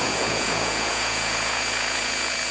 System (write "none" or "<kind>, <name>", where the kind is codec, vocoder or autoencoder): vocoder, Vocos